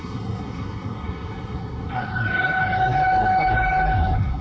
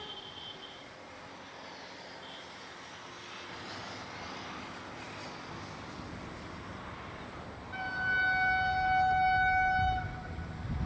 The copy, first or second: first